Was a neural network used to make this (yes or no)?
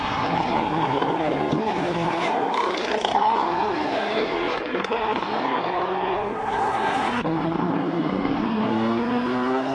yes